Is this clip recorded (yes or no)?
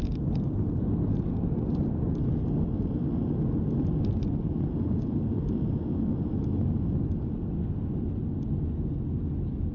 yes